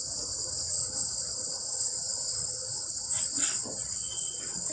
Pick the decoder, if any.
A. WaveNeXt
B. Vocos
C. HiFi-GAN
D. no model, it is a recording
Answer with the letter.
A